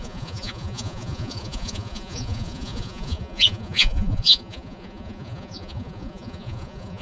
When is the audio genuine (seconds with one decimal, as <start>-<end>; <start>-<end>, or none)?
none